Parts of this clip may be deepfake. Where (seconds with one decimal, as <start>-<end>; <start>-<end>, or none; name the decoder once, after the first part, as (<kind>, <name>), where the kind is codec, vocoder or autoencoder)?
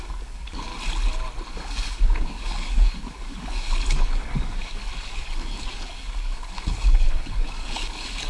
0.0-0.7 (codec, DAC); 1.5-8.3